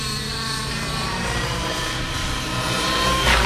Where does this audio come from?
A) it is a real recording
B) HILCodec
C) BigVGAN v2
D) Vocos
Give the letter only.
C